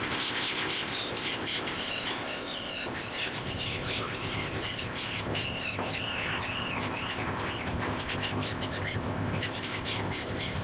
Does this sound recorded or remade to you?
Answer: remade